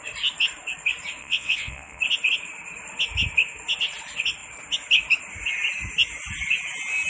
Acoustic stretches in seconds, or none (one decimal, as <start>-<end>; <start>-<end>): 0.0-1.2; 2.0-7.1